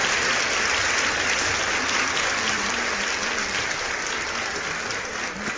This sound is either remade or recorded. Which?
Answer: recorded